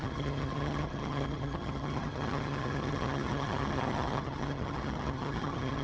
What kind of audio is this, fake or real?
fake